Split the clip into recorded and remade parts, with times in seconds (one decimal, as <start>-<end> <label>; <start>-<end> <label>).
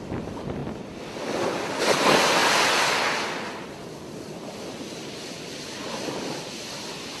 0.0-7.2 recorded